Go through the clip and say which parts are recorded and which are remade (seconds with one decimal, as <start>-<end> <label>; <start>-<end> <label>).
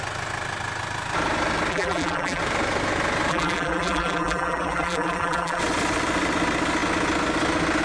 0.0-1.7 recorded; 1.7-2.4 remade; 2.4-3.3 recorded; 3.3-5.6 remade; 5.6-7.8 recorded